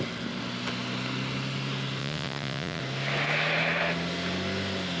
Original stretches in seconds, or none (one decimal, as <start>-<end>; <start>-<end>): 0.0-2.0; 2.8-5.0